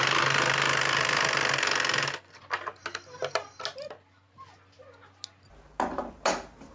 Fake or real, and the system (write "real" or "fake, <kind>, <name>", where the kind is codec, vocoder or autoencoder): real